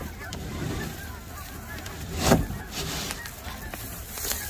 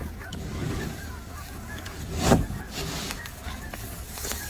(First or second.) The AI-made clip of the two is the second